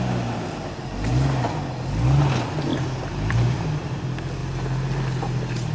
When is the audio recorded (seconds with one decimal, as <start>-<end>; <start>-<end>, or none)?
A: 0.0-2.7; 4.0-5.7